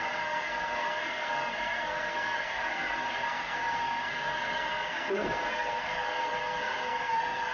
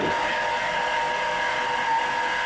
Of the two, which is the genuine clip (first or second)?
second